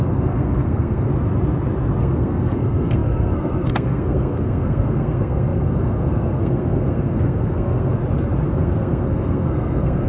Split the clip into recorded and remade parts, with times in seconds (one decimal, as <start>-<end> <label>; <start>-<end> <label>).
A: 0.0-1.1 remade; 1.1-2.0 recorded; 2.0-8.0 remade; 8.0-8.5 recorded; 8.5-10.1 remade